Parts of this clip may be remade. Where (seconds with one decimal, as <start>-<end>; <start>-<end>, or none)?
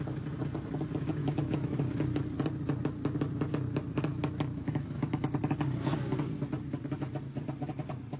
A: 1.2-1.8; 4.1-5.4